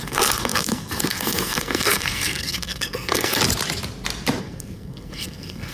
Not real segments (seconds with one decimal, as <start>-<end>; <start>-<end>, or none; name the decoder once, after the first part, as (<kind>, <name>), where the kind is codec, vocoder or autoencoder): 0.0-3.4 (codec, SNAC); 4.4-5.7

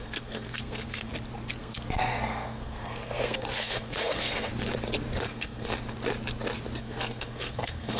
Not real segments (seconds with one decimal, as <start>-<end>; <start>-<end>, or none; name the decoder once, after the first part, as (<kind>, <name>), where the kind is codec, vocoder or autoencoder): 0.0-1.1 (codec, SNAC); 1.6-4.5; 5.2-5.7; 6.8-8.0